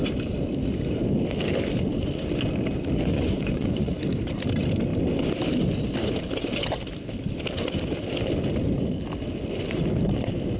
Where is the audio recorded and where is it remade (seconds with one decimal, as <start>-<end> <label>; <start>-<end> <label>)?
0.0-3.1 recorded; 3.1-4.0 remade; 4.0-10.6 recorded